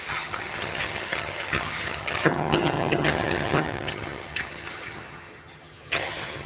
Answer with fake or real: fake